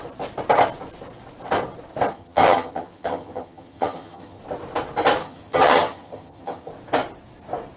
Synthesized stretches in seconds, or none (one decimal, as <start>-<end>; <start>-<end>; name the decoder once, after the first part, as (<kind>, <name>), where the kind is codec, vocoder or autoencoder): 2.1-4.4 (vocoder, HiFi-GAN); 5.2-6.7